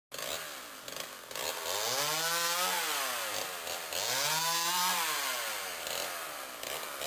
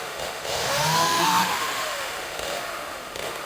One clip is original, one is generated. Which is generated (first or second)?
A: second